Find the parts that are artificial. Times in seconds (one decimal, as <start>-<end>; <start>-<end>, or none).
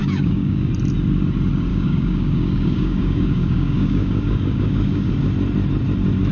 0.0-0.7; 1.7-5.1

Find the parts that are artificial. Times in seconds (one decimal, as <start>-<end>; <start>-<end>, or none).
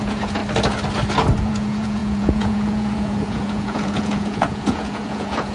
0.0-0.4; 1.4-5.5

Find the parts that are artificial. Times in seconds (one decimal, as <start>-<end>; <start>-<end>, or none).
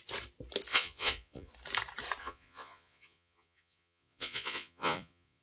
0.7-1.5; 2.2-5.4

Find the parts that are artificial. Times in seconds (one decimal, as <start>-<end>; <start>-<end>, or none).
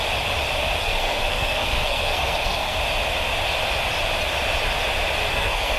0.8-2.8; 5.3-5.8